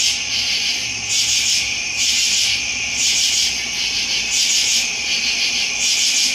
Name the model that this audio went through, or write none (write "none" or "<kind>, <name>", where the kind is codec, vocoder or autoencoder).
vocoder, BigVGAN v2